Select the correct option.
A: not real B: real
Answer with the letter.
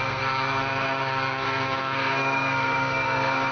A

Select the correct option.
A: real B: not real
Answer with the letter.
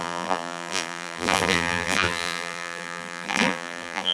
B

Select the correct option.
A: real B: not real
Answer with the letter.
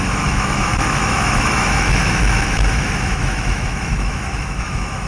B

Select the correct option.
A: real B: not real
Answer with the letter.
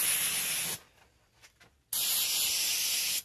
A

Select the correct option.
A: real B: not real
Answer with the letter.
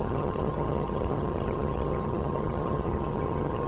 B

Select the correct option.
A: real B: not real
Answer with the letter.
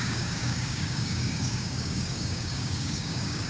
B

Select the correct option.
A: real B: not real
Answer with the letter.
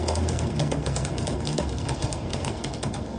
B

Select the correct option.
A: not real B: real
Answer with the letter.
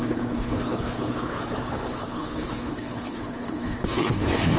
A